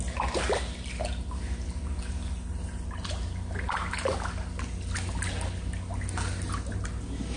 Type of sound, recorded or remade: recorded